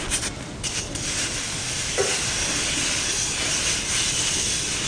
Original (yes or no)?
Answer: yes